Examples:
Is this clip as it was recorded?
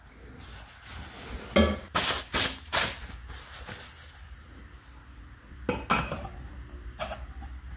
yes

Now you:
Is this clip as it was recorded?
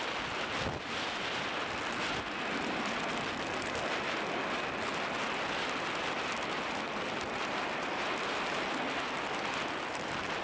yes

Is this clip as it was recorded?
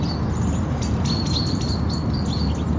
yes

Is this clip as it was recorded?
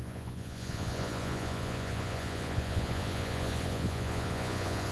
no